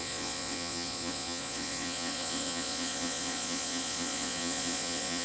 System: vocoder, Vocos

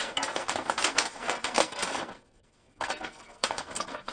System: codec, SNAC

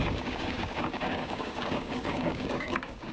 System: codec, DAC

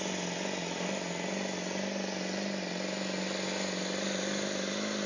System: none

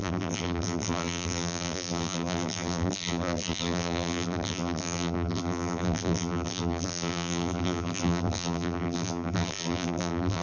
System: vocoder, BigVGAN v2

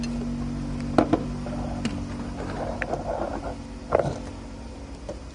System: none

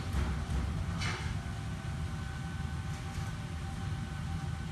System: none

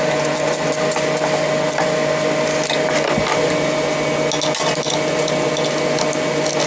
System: none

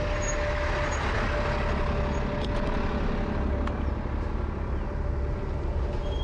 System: none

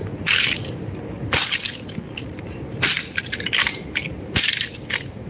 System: none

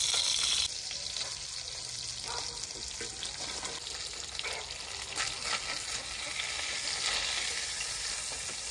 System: none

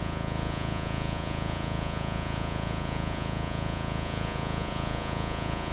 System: vocoder, Vocos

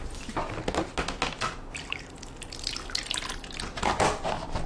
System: none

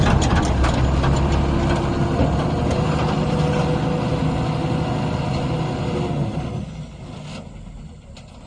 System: none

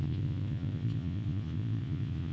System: vocoder, Vocos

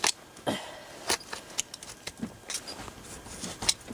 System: none